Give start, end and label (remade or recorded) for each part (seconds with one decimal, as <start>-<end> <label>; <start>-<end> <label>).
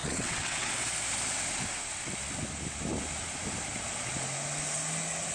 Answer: 0.0-0.7 remade; 0.7-5.3 recorded